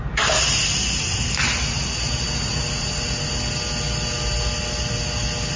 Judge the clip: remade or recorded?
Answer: recorded